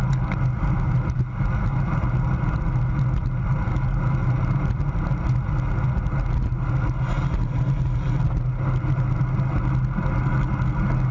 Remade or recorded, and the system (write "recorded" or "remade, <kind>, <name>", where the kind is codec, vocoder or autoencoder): recorded